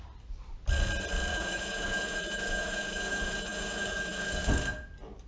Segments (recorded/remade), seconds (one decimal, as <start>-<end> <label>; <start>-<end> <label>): 0.0-1.3 recorded; 1.3-4.5 remade; 4.5-5.3 recorded